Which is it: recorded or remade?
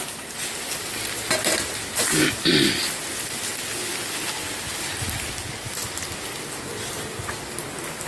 recorded